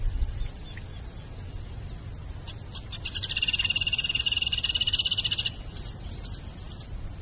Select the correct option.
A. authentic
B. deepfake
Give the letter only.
A